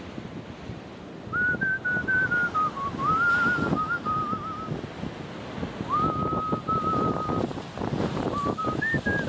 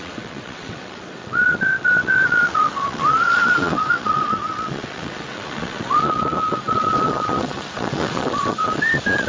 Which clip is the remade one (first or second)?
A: second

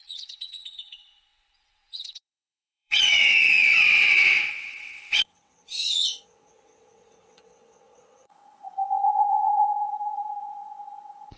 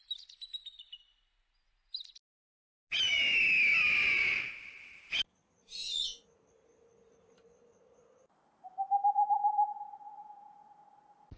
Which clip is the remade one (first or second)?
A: first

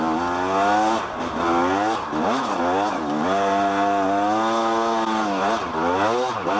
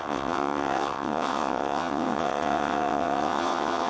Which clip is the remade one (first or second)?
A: second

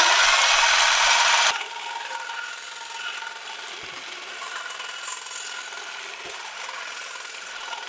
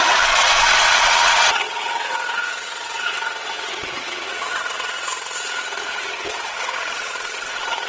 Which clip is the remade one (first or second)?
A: second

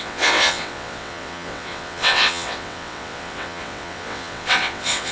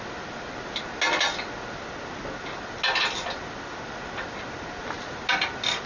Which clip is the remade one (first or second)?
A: first